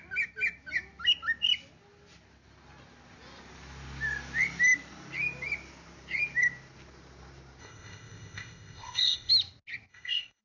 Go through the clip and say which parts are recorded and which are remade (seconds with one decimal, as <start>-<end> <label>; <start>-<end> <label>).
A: 0.0-7.6 recorded; 7.6-9.3 remade; 9.3-9.9 recorded; 9.9-10.4 remade